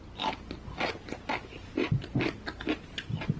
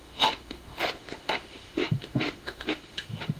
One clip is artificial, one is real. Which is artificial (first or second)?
second